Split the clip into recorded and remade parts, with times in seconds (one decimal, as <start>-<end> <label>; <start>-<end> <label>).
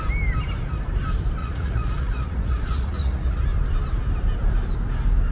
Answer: 0.0-1.4 recorded; 1.4-3.4 remade; 3.4-5.3 recorded